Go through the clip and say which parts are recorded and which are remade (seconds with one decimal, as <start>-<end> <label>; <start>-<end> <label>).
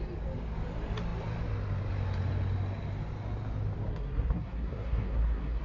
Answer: 0.0-3.9 recorded; 3.9-5.6 remade